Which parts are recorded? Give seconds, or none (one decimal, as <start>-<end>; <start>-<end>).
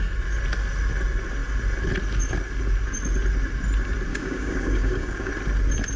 0.0-4.1; 5.3-6.0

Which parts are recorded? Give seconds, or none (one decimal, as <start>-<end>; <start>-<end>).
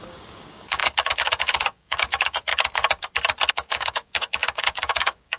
2.5-3.5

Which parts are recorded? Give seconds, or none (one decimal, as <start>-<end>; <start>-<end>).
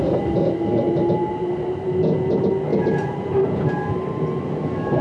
0.0-2.7; 3.4-5.0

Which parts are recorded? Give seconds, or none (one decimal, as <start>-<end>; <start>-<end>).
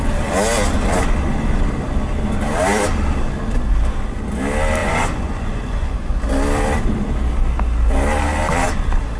0.0-4.8; 6.2-9.2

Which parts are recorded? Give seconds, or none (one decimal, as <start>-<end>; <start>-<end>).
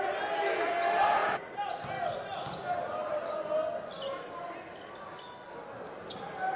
0.0-6.6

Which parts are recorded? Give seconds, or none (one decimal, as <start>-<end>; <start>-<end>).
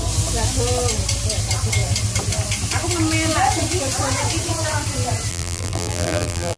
0.0-5.3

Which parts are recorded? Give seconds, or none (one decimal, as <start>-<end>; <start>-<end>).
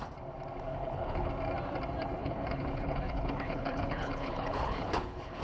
0.0-0.7; 1.3-2.2